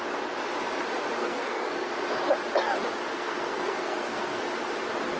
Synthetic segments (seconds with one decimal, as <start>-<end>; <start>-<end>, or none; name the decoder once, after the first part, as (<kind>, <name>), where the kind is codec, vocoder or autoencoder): 1.2-1.9 (codec, SNAC); 3.1-4.4